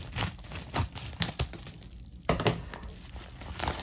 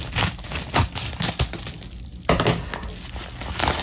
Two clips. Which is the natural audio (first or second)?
second